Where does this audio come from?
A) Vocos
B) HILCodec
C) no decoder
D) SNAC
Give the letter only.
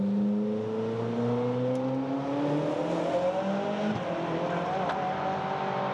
C